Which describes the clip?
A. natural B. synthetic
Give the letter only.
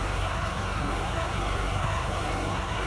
B